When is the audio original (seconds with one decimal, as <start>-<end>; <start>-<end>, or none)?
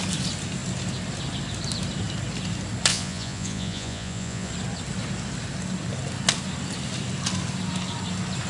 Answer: 0.0-2.9; 4.5-8.5